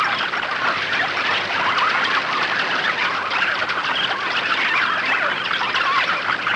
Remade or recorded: recorded